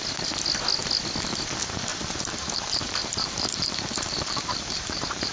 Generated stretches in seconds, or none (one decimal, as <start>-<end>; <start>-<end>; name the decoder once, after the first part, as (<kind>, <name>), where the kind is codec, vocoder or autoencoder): 1.9-5.3 (vocoder, BigVGAN v2)